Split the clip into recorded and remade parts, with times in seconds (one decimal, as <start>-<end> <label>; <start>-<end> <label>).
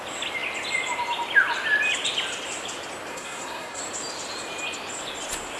0.0-3.1 recorded; 3.1-3.8 remade; 3.8-5.6 recorded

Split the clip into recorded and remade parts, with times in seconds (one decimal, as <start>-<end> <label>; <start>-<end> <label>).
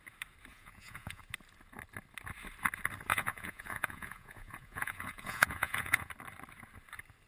0.0-0.5 recorded; 0.5-1.2 remade; 1.2-3.1 recorded; 3.1-6.1 remade; 6.1-7.3 recorded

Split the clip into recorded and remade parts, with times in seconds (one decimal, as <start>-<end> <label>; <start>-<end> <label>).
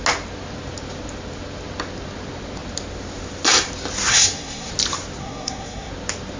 0.0-4.1 recorded; 4.1-4.7 remade; 4.7-5.2 recorded; 5.2-5.9 remade; 5.9-6.4 recorded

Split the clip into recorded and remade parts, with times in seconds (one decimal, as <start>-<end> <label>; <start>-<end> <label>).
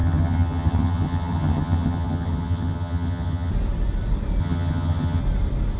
0.0-3.5 remade; 3.5-4.4 recorded; 4.4-5.2 remade; 5.2-5.8 recorded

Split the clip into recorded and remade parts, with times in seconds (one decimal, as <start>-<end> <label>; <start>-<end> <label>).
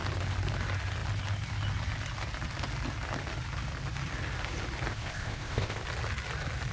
0.0-4.9 recorded; 4.9-5.8 remade; 5.8-6.7 recorded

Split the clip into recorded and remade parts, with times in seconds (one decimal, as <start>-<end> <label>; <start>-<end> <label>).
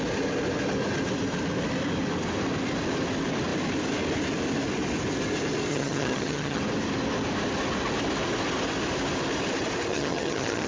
0.0-5.7 recorded; 5.7-6.6 remade; 6.6-9.9 recorded; 9.9-10.7 remade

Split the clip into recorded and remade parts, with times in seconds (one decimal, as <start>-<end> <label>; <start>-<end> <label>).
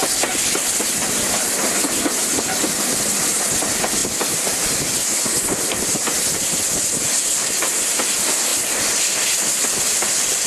0.0-10.5 recorded